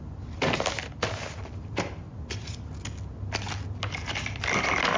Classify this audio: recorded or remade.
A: recorded